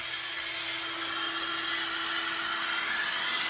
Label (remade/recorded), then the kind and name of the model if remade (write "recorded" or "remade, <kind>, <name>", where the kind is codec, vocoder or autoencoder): recorded